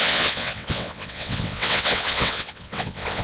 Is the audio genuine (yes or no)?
no